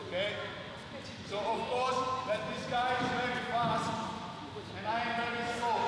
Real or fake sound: real